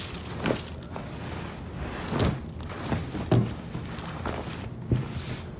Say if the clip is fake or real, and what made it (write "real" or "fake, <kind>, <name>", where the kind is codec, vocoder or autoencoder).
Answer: real